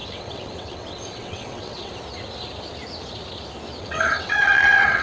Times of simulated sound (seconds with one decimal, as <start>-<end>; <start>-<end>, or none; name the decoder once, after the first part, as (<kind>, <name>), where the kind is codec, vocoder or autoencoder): 0.0-1.9 (vocoder, WaveNeXt); 3.8-5.0